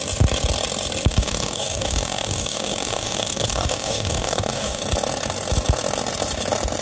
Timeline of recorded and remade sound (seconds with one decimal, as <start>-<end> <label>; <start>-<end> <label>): 0.0-1.1 recorded; 1.1-4.8 remade; 4.8-6.8 recorded